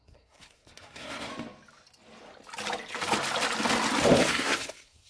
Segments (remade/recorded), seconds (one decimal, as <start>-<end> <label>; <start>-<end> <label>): 0.0-1.3 remade; 1.3-4.3 recorded; 4.3-5.1 remade